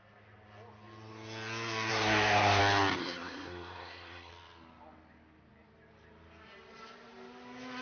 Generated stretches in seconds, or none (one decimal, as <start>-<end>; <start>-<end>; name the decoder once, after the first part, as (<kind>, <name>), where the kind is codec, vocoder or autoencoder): 1.9-2.6 (codec, SNAC); 3.0-4.3